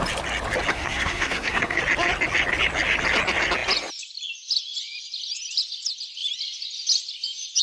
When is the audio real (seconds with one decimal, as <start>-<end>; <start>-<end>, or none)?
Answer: 0.0-0.7; 1.8-7.6